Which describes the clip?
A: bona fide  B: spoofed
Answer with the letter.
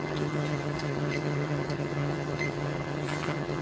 B